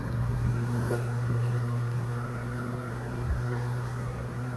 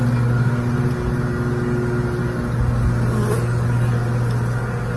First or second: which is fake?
first